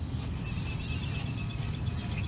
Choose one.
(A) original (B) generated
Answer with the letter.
A